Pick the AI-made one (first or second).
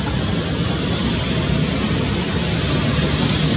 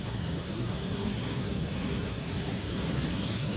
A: second